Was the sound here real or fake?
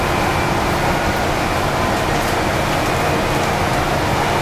real